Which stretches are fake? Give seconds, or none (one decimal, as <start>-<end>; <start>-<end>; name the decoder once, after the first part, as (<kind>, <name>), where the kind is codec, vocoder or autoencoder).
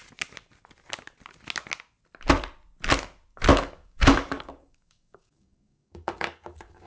3.5-6.9 (codec, DAC)